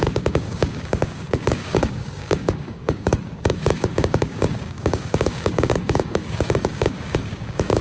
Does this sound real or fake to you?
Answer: fake